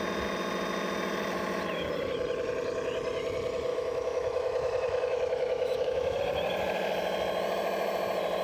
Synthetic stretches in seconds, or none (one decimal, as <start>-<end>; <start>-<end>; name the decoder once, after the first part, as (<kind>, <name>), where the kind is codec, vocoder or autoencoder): 3.7-6.2 (autoencoder, DAC-VAE)